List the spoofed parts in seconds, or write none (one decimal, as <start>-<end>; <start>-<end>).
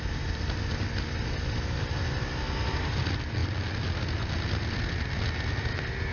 none